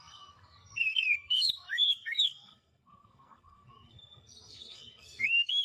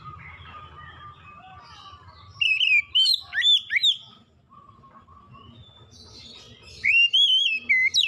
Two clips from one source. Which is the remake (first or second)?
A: first